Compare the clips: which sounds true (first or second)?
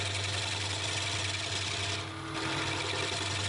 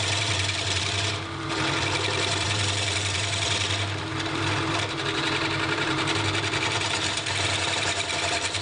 first